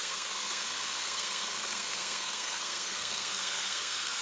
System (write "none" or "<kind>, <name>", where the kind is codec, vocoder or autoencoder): codec, SNAC